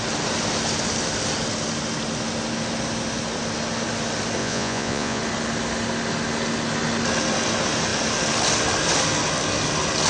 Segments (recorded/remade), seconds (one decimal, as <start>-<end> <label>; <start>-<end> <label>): 0.0-4.4 recorded; 4.4-5.2 remade; 5.2-10.1 recorded